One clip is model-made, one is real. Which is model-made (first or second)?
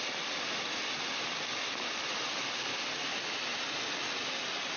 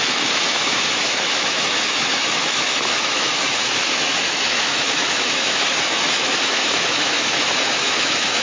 second